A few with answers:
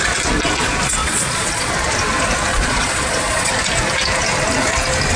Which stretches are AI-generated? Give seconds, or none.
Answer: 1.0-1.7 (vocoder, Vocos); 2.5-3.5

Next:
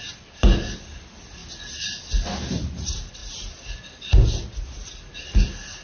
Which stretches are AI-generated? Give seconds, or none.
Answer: none